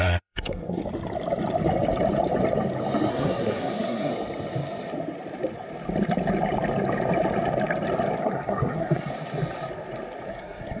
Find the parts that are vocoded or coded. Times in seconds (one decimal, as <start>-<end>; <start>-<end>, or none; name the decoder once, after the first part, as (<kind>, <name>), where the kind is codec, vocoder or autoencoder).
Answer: 0.0-0.8 (codec, SNAC); 3.1-4.1; 8.2-9.1; 10.3-10.8